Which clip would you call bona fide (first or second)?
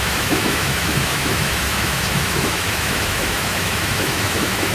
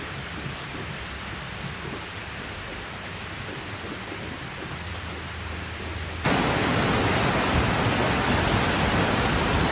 second